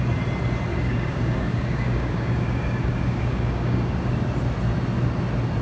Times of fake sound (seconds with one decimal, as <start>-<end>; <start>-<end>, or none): 0.7-4.1